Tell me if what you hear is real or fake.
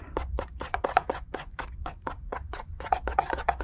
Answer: fake